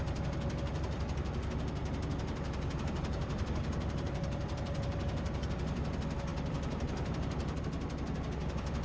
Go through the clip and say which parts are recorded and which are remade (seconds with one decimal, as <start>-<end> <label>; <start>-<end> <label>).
0.0-1.8 recorded; 1.8-5.5 remade; 5.5-6.3 recorded; 6.3-7.6 remade; 7.6-8.8 recorded